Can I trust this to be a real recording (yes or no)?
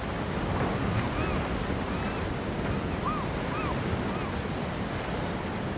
yes